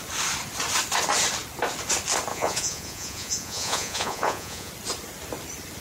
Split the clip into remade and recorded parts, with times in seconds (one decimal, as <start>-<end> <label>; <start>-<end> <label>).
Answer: 0.0-2.3 recorded; 2.3-4.7 remade; 4.7-5.8 recorded